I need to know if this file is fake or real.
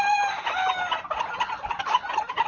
real